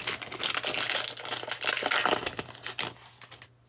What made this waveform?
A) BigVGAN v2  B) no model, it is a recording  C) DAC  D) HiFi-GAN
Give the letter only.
B